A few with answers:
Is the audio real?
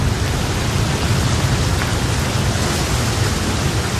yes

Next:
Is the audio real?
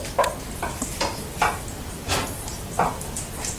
yes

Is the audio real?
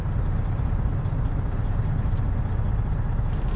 yes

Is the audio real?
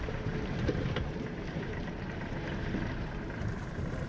no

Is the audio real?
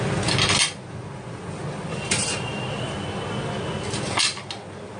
yes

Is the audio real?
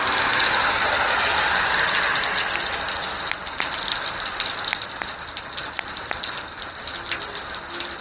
yes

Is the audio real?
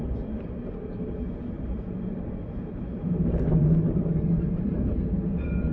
no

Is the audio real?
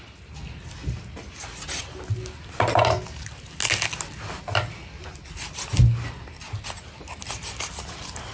yes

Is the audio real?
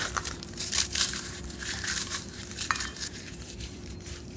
no